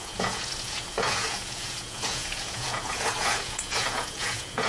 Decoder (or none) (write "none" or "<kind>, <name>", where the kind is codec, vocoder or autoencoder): vocoder, Vocos